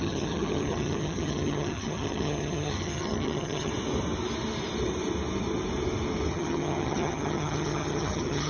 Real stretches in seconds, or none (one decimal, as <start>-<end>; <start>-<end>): 3.7-6.3